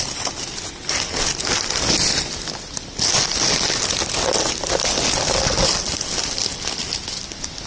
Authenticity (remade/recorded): recorded